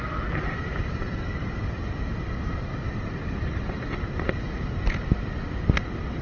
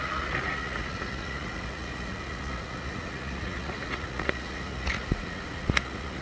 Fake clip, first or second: second